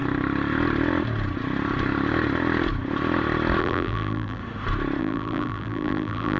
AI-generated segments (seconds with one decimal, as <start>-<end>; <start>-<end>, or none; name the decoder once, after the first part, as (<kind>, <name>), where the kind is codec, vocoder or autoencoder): 3.6-4.4 (vocoder, BigVGAN v2); 5.0-6.4

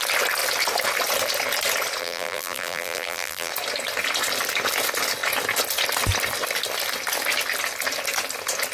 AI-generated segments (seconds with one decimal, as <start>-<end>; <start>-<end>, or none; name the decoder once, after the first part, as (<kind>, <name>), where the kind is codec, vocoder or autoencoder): 2.0-3.5 (vocoder, BigVGAN v2)

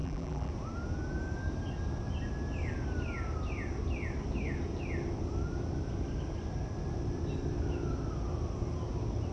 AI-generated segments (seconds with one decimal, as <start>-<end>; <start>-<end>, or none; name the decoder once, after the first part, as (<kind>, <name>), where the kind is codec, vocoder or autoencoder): 0.0-0.5 (vocoder, BigVGAN v2)

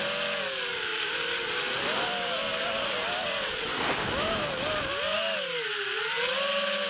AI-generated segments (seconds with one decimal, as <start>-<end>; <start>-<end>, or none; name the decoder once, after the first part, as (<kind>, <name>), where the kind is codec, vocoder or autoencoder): 0.9-4.9 (vocoder, BigVGAN v2)

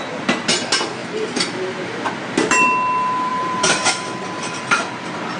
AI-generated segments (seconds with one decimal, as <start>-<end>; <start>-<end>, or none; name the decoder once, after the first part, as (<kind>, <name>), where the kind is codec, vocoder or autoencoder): 1.0-2.1 (vocoder, BigVGAN v2); 3.3-3.9

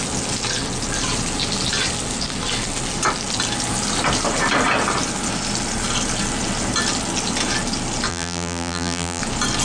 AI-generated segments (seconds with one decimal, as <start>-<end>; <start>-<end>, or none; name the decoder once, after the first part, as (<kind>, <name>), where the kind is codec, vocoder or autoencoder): 8.1-9.2 (vocoder, BigVGAN v2)

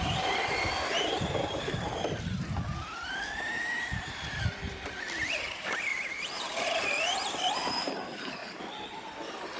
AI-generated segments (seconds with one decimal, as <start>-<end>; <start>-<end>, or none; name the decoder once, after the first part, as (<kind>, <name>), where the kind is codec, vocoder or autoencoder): 5.9-7.4 (vocoder, BigVGAN v2)